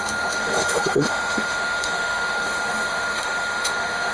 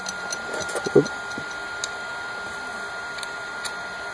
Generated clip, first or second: first